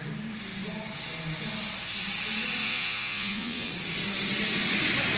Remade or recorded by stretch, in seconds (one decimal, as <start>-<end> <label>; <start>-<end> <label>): 0.0-2.6 recorded; 2.6-3.7 remade; 3.7-5.2 recorded